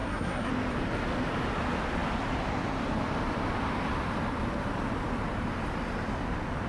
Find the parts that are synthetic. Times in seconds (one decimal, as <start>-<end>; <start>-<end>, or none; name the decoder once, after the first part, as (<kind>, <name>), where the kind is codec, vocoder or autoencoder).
0.0-0.5 (codec, SNAC)

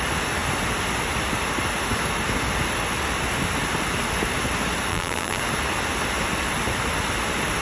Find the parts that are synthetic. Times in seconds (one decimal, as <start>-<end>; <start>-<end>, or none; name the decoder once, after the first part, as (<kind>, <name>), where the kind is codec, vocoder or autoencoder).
4.9-5.4 (vocoder, BigVGAN v2)

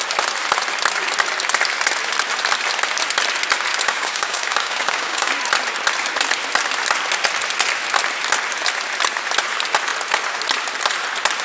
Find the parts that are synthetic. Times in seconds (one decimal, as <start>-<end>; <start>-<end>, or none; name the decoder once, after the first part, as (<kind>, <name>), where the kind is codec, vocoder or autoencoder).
3.7-5.3 (codec, DAC)

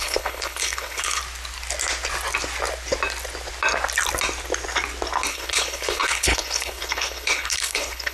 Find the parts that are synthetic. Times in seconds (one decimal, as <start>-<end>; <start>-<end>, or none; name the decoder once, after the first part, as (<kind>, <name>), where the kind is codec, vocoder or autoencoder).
0.0-1.2 (codec, HILCodec); 5.3-8.1

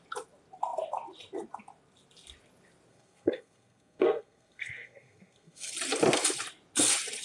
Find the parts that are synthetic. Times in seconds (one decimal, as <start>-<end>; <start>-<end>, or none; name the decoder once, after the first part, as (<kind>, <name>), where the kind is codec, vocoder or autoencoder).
2.9-5.7 (codec, SNAC)